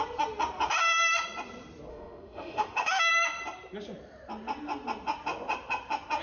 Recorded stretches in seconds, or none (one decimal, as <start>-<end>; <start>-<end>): 0.0-1.9; 3.1-6.2